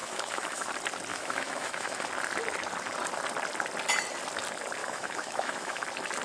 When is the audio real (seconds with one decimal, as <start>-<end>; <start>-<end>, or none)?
0.7-1.1; 2.1-4.8; 5.8-6.2